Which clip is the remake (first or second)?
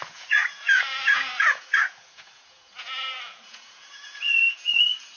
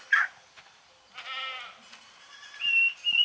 first